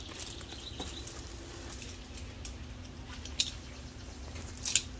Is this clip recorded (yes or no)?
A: yes